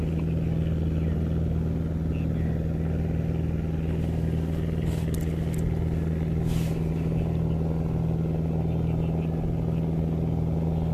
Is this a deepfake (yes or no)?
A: no